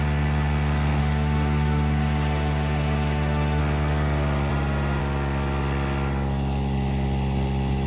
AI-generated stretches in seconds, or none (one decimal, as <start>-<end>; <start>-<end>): 1.0-3.6; 4.5-5.0